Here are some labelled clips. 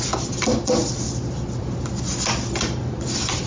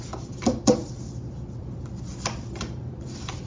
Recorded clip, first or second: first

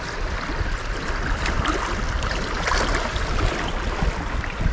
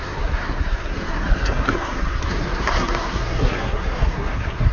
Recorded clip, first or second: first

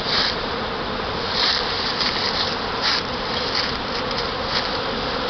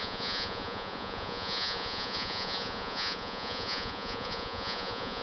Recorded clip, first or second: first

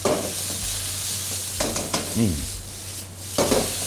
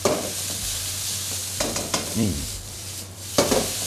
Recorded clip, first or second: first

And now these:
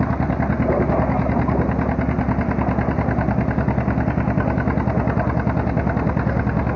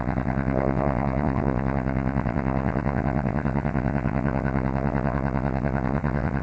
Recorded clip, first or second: first